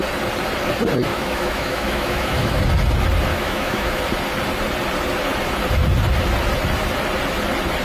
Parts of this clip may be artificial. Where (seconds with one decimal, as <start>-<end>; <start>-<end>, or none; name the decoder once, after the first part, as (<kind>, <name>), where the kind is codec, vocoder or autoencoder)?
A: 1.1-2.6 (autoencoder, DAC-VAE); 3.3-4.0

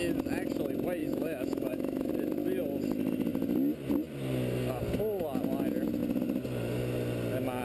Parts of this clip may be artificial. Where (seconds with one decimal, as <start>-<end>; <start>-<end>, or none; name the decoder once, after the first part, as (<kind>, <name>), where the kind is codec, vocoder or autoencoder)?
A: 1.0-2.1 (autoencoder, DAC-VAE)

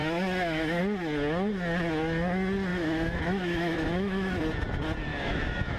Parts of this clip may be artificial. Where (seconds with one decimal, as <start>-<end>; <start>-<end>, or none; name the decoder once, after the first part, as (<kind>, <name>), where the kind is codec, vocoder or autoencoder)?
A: 0.0-0.8 (autoencoder, DAC-VAE); 2.7-4.4; 5.1-5.8

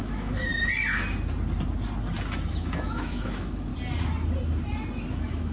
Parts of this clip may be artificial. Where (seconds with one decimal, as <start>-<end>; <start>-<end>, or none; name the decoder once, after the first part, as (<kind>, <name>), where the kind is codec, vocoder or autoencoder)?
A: 0.0-0.5 (autoencoder, DAC-VAE); 2.5-3.7; 5.1-5.5

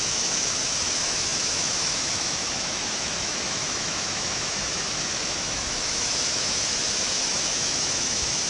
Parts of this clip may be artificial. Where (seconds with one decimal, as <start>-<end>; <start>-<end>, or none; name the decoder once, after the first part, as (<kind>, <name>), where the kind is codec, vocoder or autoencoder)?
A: 0.0-8.5 (autoencoder, DAC-VAE)

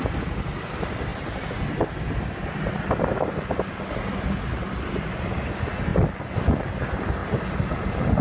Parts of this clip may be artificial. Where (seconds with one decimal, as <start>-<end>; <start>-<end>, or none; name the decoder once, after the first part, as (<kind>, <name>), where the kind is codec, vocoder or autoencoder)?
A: none

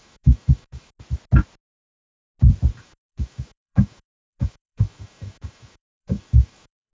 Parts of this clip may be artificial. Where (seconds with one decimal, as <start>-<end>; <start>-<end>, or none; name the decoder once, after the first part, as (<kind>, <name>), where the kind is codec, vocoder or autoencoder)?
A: 0.0-0.9 (autoencoder, DAC-VAE); 2.7-6.9

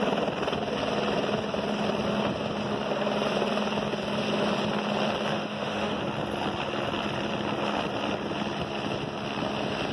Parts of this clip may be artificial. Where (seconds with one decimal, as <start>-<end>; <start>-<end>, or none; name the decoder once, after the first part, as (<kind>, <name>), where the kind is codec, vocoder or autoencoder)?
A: 5.3-6.0 (autoencoder, DAC-VAE)